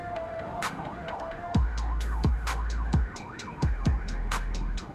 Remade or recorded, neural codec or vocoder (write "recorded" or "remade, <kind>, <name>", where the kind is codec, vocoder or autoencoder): remade, autoencoder, DAC-VAE